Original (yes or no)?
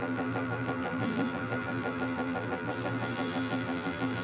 no